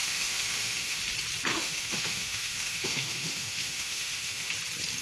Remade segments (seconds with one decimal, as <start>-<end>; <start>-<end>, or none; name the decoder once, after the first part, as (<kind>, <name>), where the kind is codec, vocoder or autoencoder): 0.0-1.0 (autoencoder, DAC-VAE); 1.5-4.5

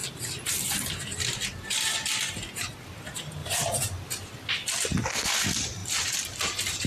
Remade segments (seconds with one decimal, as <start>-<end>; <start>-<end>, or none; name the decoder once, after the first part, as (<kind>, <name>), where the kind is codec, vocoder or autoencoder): 5.8-6.9 (vocoder, BigVGAN v2)

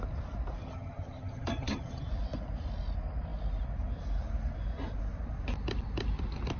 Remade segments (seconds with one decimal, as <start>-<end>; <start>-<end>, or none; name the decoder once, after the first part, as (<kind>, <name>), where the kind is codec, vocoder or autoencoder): 0.6-2.1 (vocoder, HiFi-GAN)

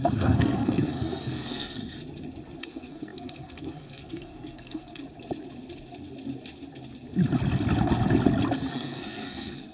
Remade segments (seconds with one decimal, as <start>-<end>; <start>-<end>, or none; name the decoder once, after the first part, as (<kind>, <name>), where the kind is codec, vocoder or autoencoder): 0.0-1.8 (codec, SNAC); 2.6-5.0; 8.7-9.7

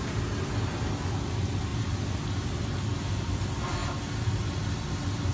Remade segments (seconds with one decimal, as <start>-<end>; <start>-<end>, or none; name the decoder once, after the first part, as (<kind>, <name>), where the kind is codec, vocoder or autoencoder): none

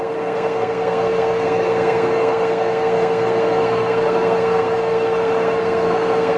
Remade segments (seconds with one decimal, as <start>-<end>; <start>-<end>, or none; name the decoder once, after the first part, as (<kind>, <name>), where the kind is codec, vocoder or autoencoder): 0.0-6.4 (codec, SNAC)

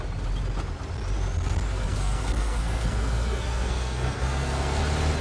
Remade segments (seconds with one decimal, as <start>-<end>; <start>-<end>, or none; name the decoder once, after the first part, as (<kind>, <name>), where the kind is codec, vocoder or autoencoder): 1.7-4.8 (codec, SNAC)

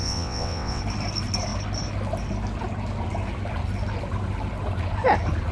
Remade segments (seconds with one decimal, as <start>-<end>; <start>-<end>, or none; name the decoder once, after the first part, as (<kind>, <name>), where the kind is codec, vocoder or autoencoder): 0.0-0.8 (vocoder, WaveNeXt)